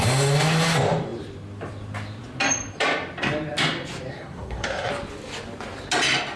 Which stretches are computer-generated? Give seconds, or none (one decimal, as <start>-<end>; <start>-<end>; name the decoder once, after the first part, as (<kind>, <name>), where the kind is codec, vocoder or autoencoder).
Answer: 4.1-4.9 (codec, SNAC)